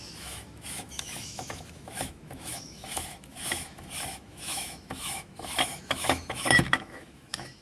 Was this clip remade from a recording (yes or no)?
yes